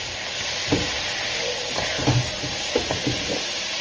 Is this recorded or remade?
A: recorded